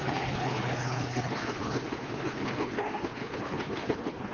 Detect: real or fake fake